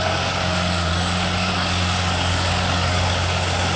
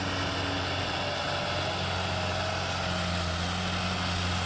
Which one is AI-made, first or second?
first